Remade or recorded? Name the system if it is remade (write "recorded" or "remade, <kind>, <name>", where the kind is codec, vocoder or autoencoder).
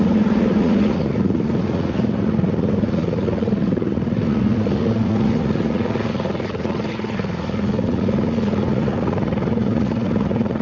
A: remade, vocoder, Vocos